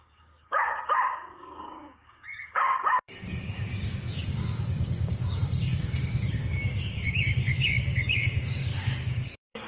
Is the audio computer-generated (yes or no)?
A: yes